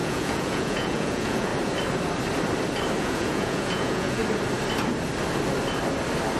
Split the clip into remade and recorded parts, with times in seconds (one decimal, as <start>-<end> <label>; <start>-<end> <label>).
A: 0.0-1.5 remade; 1.5-3.0 recorded; 3.0-4.2 remade; 4.2-6.4 recorded